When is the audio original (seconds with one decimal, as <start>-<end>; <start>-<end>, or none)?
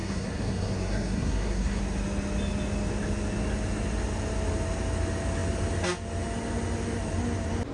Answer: 1.8-7.7